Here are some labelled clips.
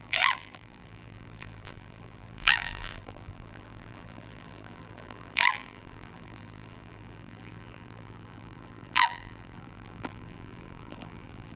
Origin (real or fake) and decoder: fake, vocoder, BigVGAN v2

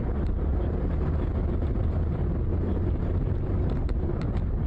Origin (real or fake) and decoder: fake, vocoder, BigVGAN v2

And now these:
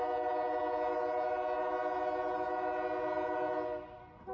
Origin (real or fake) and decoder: real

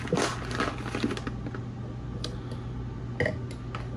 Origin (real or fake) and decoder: real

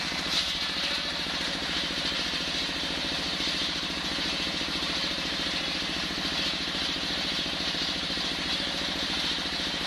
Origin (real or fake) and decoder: fake, vocoder, BigVGAN v2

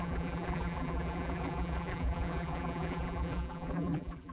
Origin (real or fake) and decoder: fake, vocoder, BigVGAN v2